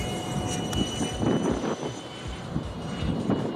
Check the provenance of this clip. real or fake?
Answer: real